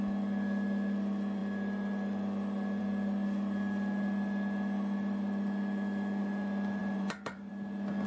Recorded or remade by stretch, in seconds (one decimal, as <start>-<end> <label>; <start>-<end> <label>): 0.0-6.8 recorded; 6.8-7.5 remade; 7.5-8.1 recorded